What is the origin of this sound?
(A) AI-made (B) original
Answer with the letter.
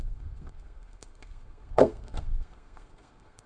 A